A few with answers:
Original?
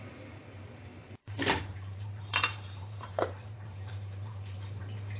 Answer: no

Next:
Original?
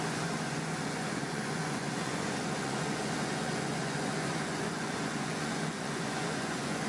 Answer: no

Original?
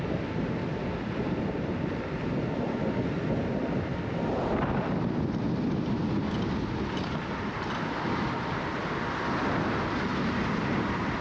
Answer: yes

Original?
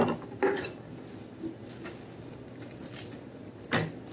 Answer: yes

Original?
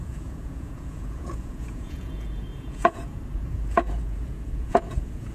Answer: no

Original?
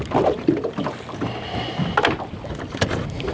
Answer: yes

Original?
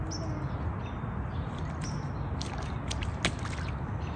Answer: yes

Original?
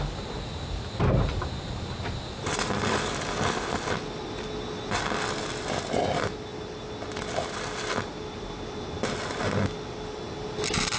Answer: yes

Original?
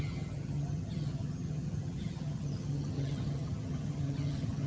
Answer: no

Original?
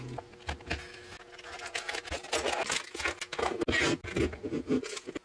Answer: yes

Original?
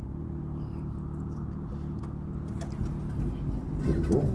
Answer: yes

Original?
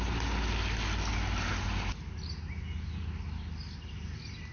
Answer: yes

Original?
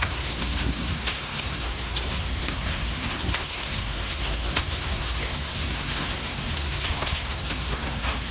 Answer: no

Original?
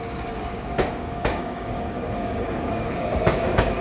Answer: no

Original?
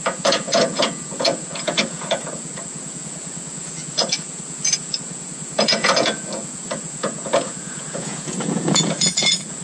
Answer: no